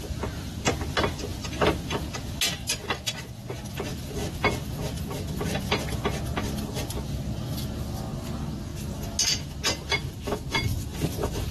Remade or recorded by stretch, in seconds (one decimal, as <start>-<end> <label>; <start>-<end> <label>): 0.0-11.5 recorded